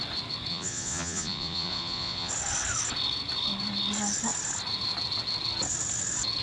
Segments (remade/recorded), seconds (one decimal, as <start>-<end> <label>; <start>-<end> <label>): 0.0-0.5 recorded; 0.5-2.3 remade; 2.3-6.4 recorded